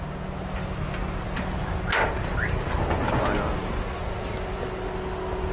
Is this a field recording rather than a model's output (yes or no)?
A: yes